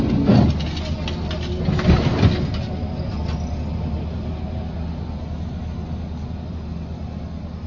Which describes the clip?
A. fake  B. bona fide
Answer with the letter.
B